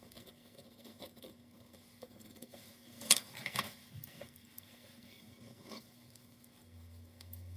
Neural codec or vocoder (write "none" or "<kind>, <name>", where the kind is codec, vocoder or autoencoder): codec, SNAC